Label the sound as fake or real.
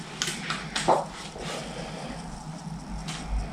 real